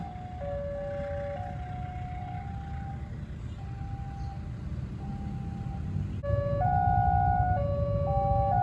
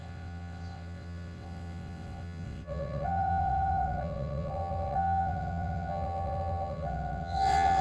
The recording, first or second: first